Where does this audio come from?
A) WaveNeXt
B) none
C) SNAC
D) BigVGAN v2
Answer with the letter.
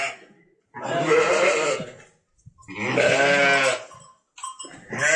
B